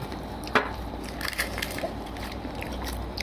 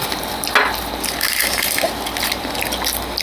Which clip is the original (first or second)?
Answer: second